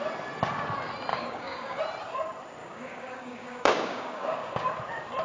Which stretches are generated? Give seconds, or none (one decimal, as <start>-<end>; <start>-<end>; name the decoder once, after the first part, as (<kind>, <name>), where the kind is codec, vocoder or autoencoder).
1.1-1.8 (codec, DAC); 2.6-4.7